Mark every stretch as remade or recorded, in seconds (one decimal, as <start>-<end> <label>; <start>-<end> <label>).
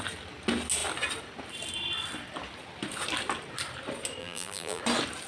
0.0-4.2 recorded; 4.2-4.8 remade; 4.8-5.3 recorded